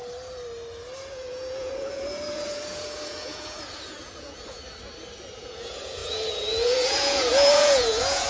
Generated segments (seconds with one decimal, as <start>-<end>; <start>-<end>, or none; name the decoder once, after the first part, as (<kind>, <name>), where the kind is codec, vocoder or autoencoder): 1.1-4.6 (vocoder, Vocos); 5.4-8.3